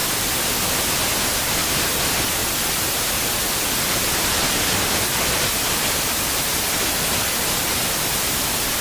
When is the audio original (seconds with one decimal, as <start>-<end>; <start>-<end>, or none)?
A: 0.0-8.8